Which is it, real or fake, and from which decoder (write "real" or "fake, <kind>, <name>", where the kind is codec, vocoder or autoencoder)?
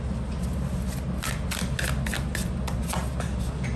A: real